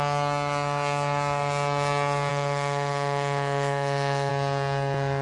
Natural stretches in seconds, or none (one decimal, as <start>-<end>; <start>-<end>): 0.0-2.3; 4.3-5.2